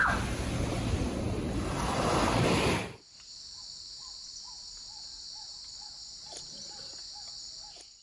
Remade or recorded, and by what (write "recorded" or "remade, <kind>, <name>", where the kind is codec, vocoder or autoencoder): recorded